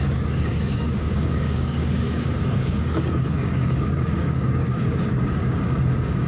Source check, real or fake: fake